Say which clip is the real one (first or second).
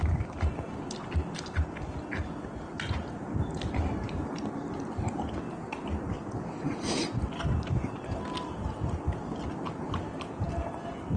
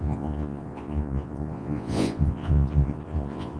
first